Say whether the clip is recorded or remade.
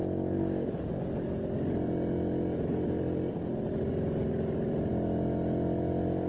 recorded